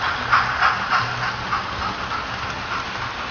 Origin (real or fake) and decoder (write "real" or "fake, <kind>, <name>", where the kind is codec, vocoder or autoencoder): real